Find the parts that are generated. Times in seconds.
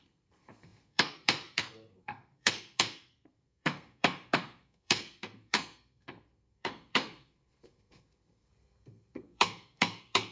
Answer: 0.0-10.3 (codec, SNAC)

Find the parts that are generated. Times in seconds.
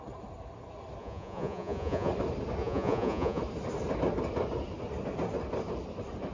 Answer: 1.0-2.1 (vocoder, Vocos); 2.6-3.4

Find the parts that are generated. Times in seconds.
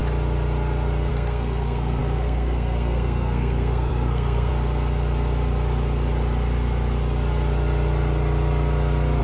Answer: 1.1-4.5 (codec, SNAC)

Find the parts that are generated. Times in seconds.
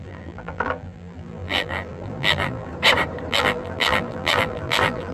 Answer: 0.0-2.7 (vocoder, BigVGAN v2); 3.3-5.1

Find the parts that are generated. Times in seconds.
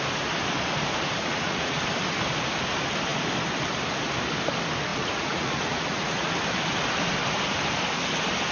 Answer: 1.2-1.8 (vocoder, Vocos); 4.9-6.3